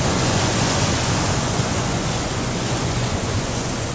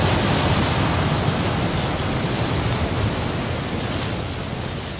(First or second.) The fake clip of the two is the first